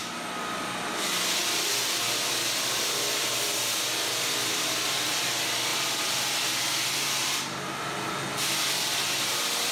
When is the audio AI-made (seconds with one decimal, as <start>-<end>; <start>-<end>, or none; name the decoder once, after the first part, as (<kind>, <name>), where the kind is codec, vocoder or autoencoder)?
none